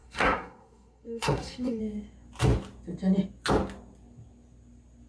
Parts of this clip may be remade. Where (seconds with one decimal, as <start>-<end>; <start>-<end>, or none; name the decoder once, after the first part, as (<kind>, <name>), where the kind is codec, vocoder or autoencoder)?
0.0-1.8 (codec, SNAC)